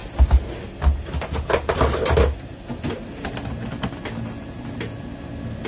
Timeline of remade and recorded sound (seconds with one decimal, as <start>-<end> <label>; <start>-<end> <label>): 0.0-5.7 recorded